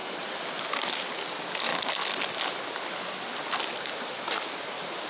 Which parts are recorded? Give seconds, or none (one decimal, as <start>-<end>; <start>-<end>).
0.0-5.1